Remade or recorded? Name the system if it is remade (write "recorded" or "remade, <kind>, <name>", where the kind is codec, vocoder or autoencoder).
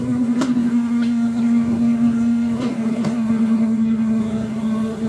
remade, codec, SNAC